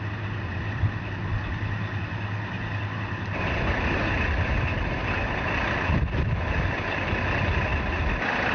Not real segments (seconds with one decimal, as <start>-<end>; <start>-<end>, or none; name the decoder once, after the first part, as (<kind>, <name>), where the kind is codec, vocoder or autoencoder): 0.5-2.0 (vocoder, BigVGAN v2); 7.7-8.5